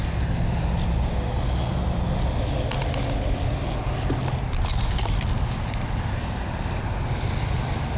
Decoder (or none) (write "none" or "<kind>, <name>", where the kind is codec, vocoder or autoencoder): none